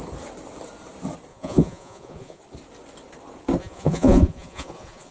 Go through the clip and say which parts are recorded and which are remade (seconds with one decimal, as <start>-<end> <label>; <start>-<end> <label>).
0.0-1.3 recorded; 1.3-2.4 remade; 2.4-3.6 recorded; 3.6-5.1 remade